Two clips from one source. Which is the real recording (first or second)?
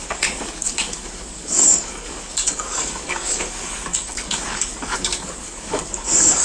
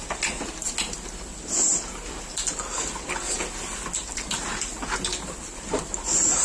second